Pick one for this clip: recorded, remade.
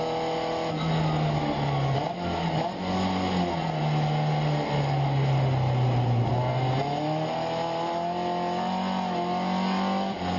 recorded